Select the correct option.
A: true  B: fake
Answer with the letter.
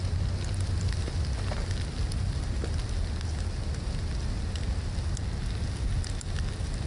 A